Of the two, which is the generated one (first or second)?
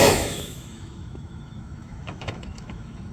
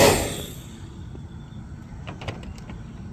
first